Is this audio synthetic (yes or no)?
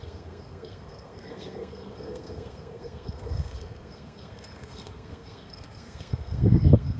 yes